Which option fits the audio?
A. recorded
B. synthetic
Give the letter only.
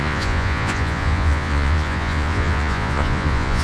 B